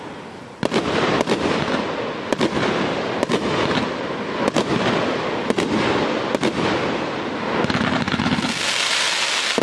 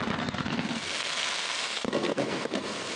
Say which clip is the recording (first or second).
first